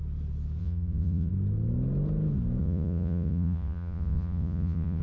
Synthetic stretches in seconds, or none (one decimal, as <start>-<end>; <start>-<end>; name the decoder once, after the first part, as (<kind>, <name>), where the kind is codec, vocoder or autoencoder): 0.6-1.3 (vocoder, Vocos); 2.6-5.0

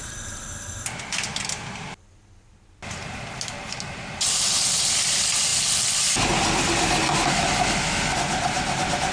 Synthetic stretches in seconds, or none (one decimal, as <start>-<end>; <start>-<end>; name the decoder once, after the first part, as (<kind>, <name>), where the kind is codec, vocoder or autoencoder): none

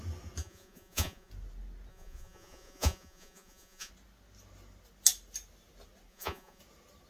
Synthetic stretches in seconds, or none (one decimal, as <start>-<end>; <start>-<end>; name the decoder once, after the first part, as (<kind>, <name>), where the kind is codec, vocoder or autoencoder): 0.4-1.3 (vocoder, Vocos); 1.9-3.9; 6.1-6.6

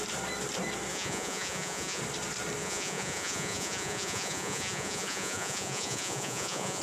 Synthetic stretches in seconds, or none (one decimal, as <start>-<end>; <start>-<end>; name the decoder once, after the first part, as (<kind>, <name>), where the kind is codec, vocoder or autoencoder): 0.9-2.0 (vocoder, Vocos); 2.6-6.8

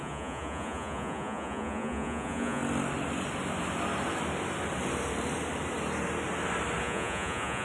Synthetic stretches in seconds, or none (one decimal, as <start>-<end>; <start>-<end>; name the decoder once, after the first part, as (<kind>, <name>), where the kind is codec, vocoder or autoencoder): 0.0-2.6 (vocoder, Vocos); 6.8-7.6

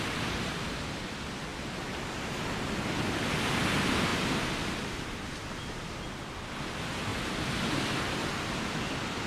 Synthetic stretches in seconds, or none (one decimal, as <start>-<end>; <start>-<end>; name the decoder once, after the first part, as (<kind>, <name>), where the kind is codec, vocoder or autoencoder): none

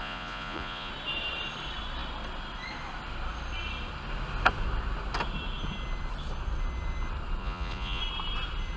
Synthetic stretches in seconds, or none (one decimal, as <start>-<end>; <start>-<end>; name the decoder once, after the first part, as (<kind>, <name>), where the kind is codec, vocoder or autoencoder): 0.0-0.9 (vocoder, Vocos); 7.4-8.0

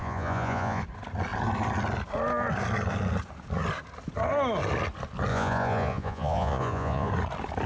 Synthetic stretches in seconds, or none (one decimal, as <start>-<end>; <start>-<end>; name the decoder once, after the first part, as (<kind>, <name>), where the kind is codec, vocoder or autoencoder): 0.0-0.8 (vocoder, Vocos); 5.3-7.1